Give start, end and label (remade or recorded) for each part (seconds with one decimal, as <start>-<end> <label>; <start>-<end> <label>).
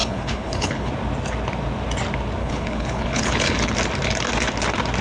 0.0-0.9 remade; 0.9-2.4 recorded; 2.4-3.7 remade; 3.7-5.0 recorded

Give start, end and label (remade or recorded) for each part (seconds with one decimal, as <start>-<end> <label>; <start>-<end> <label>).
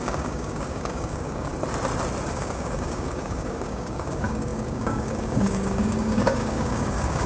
0.0-1.5 remade; 1.5-2.3 recorded; 2.3-7.3 remade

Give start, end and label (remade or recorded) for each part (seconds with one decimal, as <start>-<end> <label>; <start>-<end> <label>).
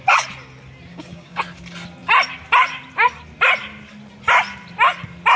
0.0-0.9 recorded; 0.9-1.4 remade; 1.4-5.4 recorded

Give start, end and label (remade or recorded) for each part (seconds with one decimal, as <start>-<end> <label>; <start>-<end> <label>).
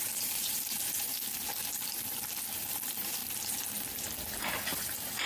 0.0-1.1 remade; 1.1-2.5 recorded; 2.5-3.2 remade; 3.2-4.8 recorded; 4.8-5.3 remade